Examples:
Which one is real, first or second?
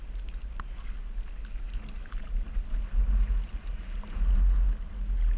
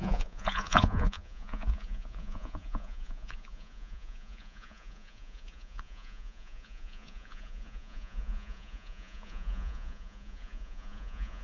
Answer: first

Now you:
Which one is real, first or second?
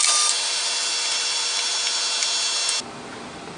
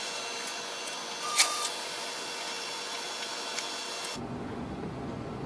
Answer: first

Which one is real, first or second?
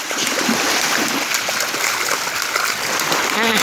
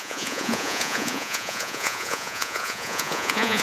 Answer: first